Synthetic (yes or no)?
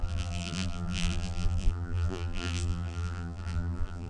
yes